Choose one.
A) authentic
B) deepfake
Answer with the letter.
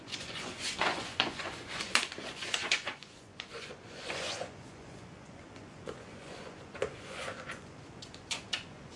B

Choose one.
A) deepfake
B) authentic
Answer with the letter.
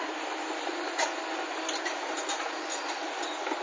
B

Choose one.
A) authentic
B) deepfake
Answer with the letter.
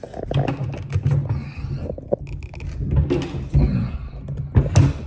A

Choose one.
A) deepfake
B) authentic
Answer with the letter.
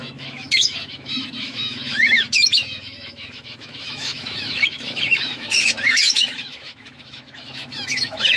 A